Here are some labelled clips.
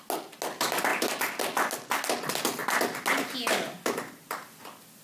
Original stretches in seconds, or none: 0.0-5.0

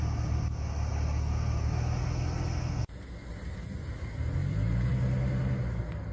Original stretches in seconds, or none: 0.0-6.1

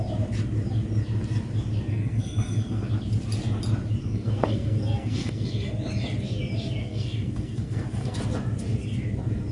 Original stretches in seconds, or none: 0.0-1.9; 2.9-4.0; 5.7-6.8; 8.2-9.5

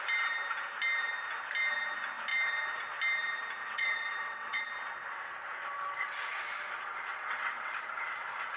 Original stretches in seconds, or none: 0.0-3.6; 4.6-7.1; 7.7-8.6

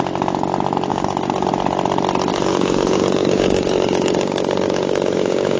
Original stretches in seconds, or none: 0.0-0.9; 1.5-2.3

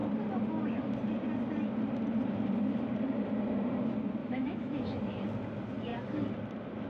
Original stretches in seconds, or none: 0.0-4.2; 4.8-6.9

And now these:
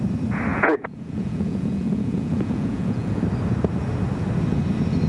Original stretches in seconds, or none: 0.0-0.5; 3.2-5.1

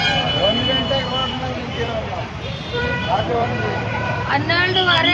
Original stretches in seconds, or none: 0.0-1.2; 4.3-5.1